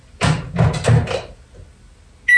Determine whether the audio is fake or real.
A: real